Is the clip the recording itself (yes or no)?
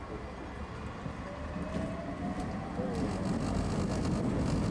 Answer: yes